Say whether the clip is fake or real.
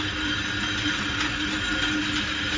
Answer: real